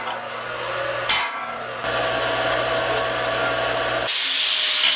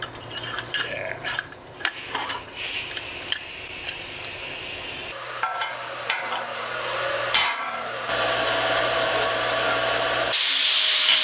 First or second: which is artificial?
second